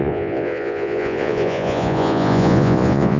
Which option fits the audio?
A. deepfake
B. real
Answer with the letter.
A